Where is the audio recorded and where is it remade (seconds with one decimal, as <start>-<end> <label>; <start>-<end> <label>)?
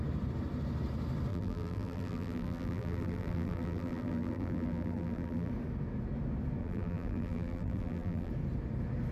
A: 0.0-1.3 recorded; 1.3-5.5 remade; 5.5-6.6 recorded; 6.6-8.3 remade; 8.3-9.1 recorded